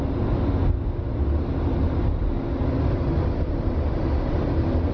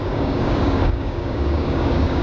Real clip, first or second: first